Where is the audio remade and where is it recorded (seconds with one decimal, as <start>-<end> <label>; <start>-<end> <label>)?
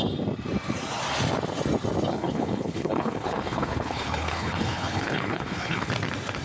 0.0-2.1 recorded; 2.1-5.9 remade; 5.9-6.4 recorded